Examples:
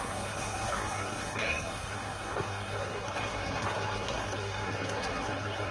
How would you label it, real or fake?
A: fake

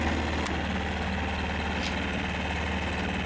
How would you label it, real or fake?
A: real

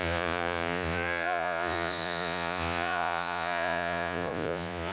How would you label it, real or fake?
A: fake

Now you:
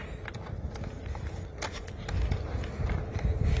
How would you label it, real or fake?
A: real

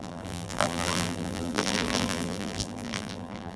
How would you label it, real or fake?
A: fake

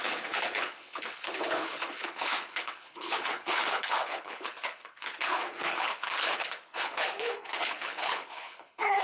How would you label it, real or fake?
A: fake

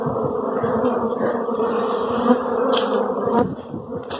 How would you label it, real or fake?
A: fake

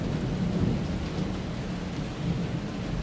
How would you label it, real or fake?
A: real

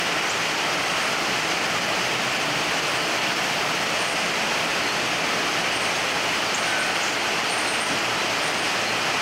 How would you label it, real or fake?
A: real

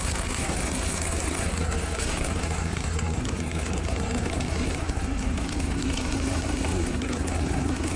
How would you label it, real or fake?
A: fake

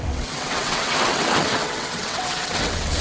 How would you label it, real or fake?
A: fake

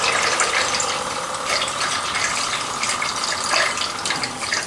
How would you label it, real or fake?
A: real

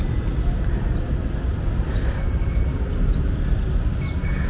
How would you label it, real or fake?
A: real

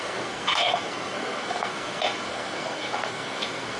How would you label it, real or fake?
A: fake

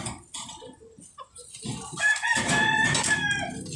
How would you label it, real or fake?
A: fake